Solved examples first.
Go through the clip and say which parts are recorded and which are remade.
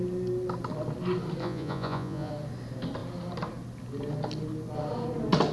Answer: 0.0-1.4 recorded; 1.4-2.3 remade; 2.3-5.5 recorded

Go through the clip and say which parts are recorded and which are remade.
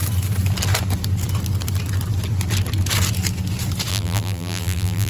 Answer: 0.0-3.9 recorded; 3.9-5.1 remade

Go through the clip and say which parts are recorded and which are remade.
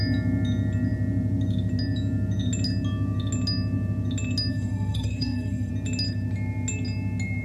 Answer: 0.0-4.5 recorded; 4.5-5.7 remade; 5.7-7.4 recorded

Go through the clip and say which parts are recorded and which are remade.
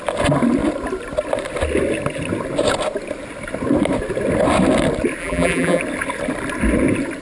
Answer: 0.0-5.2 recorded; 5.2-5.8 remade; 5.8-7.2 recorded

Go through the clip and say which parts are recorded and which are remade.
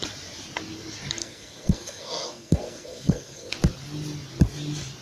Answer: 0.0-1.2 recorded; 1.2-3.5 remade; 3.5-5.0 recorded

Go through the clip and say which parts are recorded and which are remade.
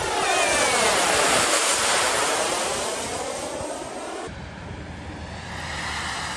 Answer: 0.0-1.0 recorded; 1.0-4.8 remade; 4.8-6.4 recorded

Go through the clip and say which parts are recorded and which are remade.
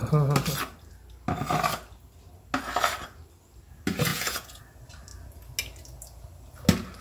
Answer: 0.0-4.1 recorded; 4.1-4.6 remade; 4.6-7.0 recorded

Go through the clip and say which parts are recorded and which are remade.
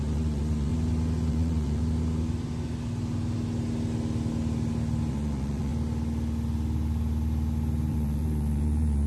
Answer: 0.0-0.7 remade; 0.7-1.3 recorded; 1.3-1.8 remade; 1.8-5.1 recorded; 5.1-5.7 remade; 5.7-7.9 recorded; 7.9-9.1 remade